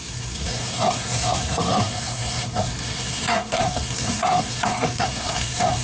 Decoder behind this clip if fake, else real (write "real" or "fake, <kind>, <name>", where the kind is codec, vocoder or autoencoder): fake, codec, SNAC